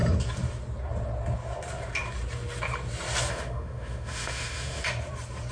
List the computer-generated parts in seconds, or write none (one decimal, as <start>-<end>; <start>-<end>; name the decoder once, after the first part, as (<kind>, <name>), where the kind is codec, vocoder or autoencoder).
3.3-4.8 (autoencoder, DAC-VAE)